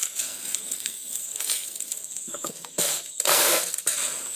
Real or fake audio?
fake